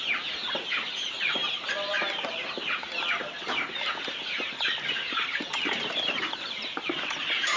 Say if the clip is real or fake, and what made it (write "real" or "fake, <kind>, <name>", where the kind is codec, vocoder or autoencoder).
real